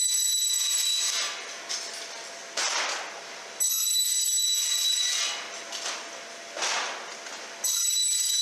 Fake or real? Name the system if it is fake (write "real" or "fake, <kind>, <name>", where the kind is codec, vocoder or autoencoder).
real